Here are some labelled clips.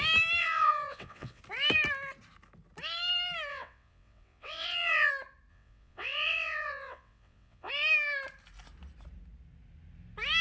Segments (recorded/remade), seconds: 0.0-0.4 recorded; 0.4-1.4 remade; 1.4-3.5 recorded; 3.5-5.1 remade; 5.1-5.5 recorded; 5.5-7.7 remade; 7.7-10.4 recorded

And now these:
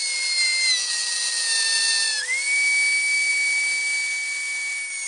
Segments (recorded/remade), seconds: 0.0-5.1 recorded

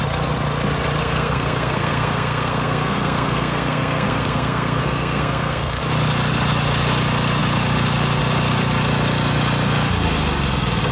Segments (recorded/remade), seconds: 0.0-1.0 recorded; 1.0-5.8 remade; 5.8-10.9 recorded

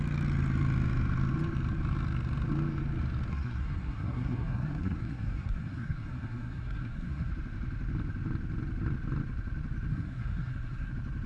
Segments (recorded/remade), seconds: 0.0-3.3 recorded; 3.3-7.3 remade; 7.3-9.9 recorded; 9.9-10.9 remade; 10.9-11.3 recorded

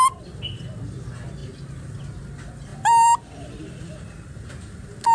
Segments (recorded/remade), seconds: 0.0-5.1 recorded

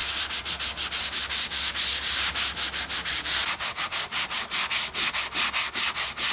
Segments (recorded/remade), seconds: 0.0-6.3 recorded

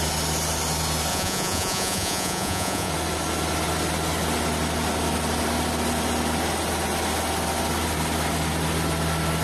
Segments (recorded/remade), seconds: 0.0-1.1 recorded; 1.1-2.9 remade; 2.9-9.4 recorded